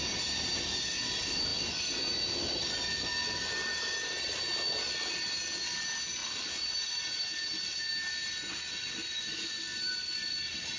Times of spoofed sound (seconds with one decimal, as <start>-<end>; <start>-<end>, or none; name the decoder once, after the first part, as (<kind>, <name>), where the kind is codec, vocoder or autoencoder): 9.7-10.4 (vocoder, BigVGAN v2)